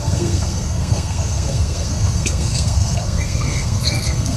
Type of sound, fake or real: fake